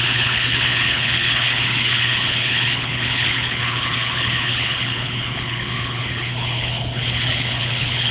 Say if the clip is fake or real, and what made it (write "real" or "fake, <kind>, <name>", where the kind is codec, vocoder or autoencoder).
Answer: fake, codec, HILCodec